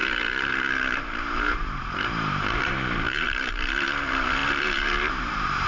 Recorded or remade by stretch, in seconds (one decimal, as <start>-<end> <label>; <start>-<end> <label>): 0.0-5.7 remade